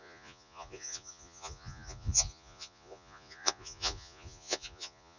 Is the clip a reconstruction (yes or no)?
yes